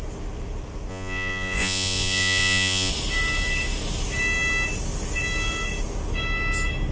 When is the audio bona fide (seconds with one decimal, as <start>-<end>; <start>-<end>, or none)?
0.0-0.9; 2.9-6.9